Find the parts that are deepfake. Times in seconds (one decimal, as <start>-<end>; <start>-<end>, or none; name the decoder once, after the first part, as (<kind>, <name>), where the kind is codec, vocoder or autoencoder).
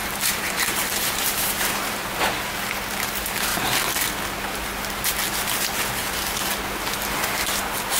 0.0-2.2 (vocoder, BigVGAN v2); 6.0-6.5